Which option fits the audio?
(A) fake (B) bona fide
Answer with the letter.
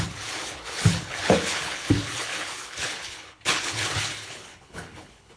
A